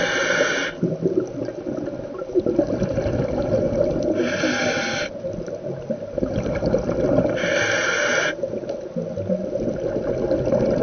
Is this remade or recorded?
recorded